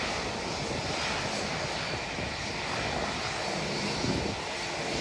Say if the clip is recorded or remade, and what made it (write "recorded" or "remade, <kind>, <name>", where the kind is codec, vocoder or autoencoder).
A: recorded